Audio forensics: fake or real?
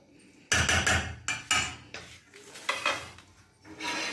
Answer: real